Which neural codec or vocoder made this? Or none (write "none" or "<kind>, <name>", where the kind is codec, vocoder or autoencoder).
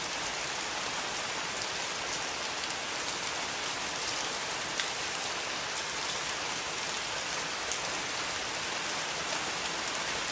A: none